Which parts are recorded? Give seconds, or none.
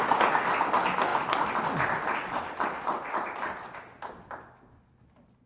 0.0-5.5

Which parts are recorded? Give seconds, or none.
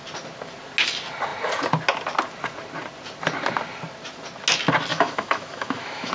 0.0-4.9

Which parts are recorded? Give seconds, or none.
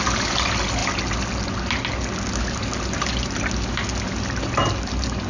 0.0-5.3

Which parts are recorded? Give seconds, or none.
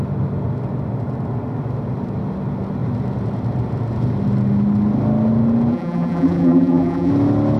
0.0-5.7; 7.1-7.6